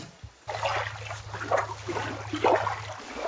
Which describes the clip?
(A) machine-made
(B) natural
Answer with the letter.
B